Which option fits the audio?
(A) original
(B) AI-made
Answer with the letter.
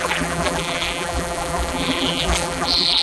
B